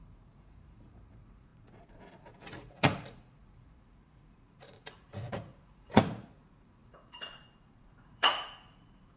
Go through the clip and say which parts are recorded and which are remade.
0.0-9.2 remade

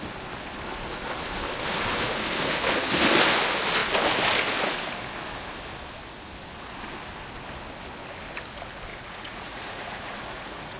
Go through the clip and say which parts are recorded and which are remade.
0.0-8.9 recorded; 8.9-10.8 remade